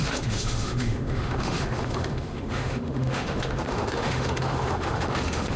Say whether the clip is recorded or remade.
remade